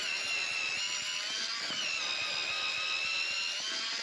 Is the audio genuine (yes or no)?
yes